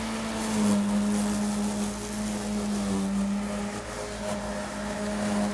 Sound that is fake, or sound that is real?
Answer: real